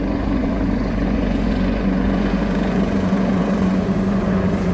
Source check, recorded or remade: remade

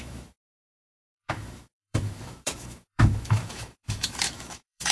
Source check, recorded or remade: remade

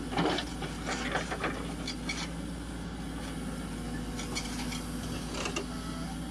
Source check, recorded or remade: recorded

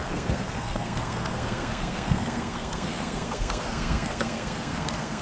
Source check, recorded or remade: remade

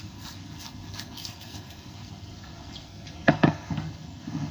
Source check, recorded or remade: remade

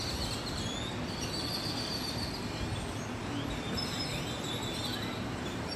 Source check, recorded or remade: recorded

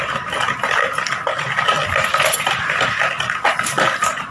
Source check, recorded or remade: remade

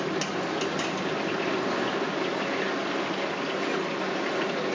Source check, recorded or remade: recorded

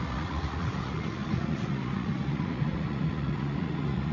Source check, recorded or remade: remade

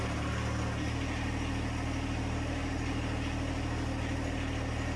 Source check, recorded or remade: recorded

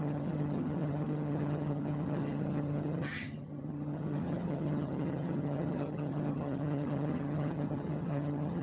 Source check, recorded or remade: remade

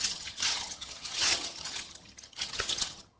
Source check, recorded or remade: remade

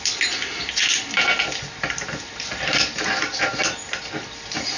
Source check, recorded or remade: recorded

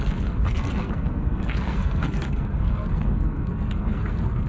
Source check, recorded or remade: remade